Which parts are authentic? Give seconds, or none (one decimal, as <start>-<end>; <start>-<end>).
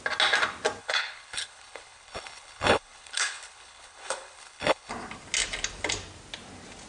0.0-0.8; 4.9-6.9